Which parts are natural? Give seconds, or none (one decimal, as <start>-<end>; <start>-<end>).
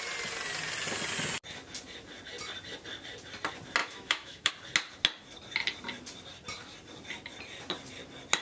0.0-3.8; 4.5-8.4